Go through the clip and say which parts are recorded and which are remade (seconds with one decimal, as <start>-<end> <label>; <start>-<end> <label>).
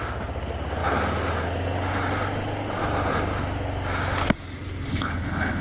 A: 0.0-4.9 recorded; 4.9-5.6 remade